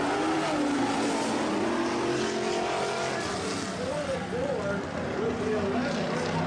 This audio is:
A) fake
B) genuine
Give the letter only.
B